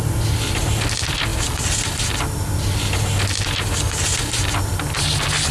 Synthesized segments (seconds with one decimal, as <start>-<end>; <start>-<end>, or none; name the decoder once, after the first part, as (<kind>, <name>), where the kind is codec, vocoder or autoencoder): none